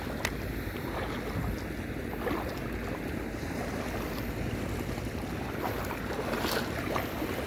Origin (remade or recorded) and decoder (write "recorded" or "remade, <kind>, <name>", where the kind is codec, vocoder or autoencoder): recorded